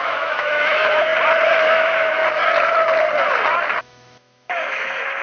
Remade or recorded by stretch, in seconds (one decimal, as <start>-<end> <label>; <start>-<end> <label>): 0.0-1.1 remade; 1.1-1.7 recorded; 1.7-2.2 remade; 2.2-3.8 recorded; 3.8-5.2 remade